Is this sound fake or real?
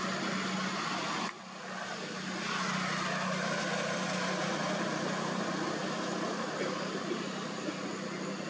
real